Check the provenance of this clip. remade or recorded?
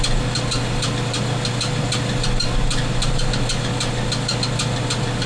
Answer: recorded